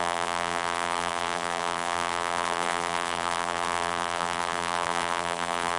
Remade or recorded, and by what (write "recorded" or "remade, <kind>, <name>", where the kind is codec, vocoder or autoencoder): remade, vocoder, BigVGAN v2